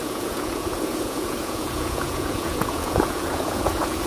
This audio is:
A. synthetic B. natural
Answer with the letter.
A